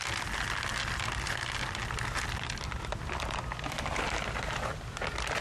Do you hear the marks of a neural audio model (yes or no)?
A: no